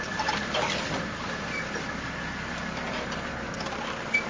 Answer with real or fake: real